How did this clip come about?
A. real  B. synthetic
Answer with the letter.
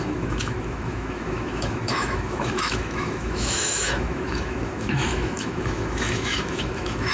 B